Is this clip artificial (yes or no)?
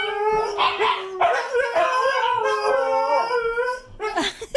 no